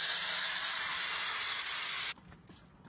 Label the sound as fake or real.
real